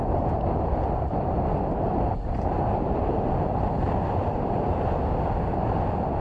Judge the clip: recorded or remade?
recorded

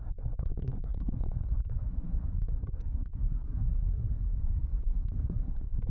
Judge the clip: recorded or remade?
remade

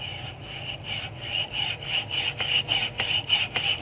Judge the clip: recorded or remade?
recorded